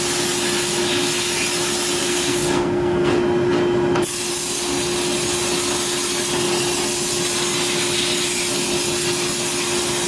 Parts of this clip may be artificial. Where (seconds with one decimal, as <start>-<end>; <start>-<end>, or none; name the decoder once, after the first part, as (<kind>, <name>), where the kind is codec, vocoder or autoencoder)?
2.0-3.1 (codec, SNAC)